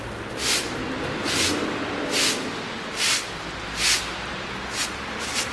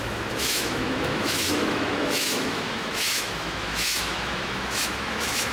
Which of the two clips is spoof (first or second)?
second